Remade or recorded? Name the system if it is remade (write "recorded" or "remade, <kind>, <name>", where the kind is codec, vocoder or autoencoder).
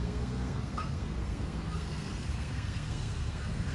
remade, codec, SNAC